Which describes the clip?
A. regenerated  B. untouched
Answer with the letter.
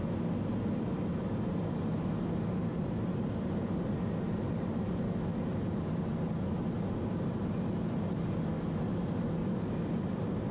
B